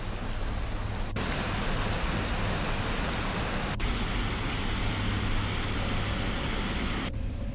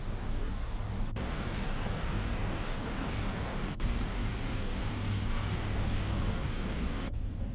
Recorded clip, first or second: first